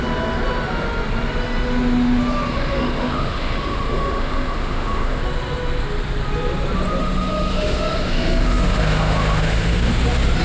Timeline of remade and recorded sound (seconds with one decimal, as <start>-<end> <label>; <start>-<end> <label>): 0.0-2.5 recorded; 2.5-5.2 remade; 5.2-7.0 recorded; 7.0-9.9 remade; 9.9-10.4 recorded

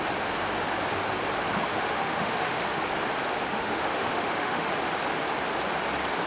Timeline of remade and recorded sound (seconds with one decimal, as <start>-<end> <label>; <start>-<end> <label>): 0.0-1.7 recorded; 1.7-2.8 remade; 2.8-3.5 recorded; 3.5-4.7 remade; 4.7-6.3 recorded

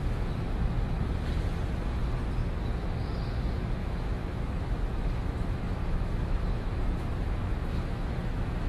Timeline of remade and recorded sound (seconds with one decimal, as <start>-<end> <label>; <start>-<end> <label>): 0.0-3.8 recorded; 3.8-8.7 remade

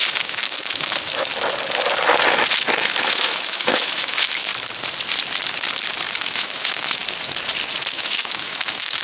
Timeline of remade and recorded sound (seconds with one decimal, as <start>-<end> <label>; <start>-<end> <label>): 0.0-1.3 remade; 1.3-2.5 recorded; 2.5-4.5 remade; 4.5-6.2 recorded; 6.2-7.0 remade; 7.0-7.9 recorded; 7.9-9.0 remade

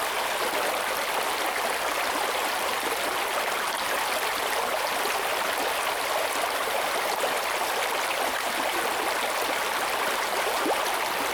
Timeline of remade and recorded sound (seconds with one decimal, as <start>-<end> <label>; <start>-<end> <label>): 0.0-11.3 recorded